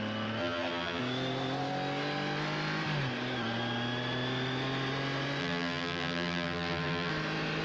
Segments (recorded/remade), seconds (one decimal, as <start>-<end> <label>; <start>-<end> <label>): 0.0-0.4 recorded; 0.4-1.0 remade; 1.0-5.4 recorded; 5.4-7.1 remade; 7.1-7.6 recorded